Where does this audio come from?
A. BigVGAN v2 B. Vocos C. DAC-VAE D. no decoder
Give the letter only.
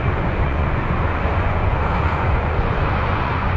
B